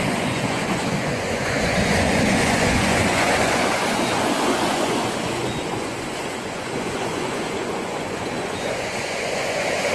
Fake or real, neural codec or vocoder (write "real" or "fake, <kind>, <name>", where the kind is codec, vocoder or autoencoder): fake, vocoder, Vocos